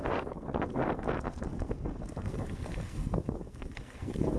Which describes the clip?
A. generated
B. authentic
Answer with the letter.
A